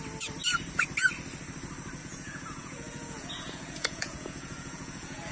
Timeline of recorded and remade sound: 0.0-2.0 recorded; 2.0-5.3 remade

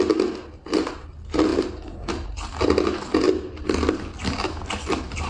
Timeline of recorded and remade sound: 0.0-5.3 recorded

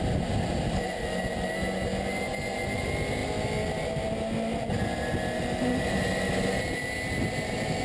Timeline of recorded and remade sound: 0.0-7.8 recorded

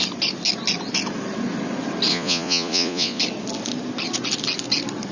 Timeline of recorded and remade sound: 0.0-2.1 recorded; 2.1-3.2 remade; 3.2-5.1 recorded

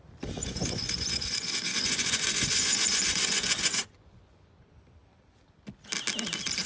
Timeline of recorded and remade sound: 0.0-0.4 recorded; 0.4-4.4 remade; 4.4-6.7 recorded

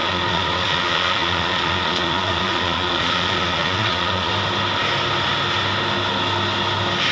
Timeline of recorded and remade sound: 0.0-4.3 remade; 4.3-7.1 recorded

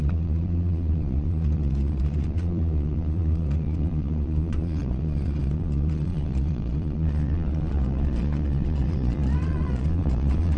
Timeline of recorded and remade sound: 0.0-10.6 remade

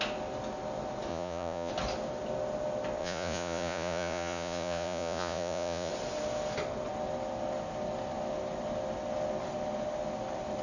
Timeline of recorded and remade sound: 0.0-1.1 recorded; 1.1-1.7 remade; 1.7-3.0 recorded; 3.0-5.9 remade; 5.9-10.6 recorded